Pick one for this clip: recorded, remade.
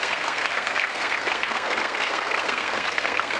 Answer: remade